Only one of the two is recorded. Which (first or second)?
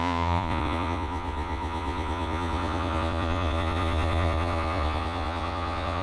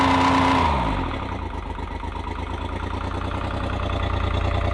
second